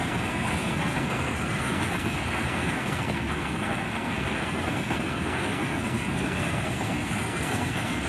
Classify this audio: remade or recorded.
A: remade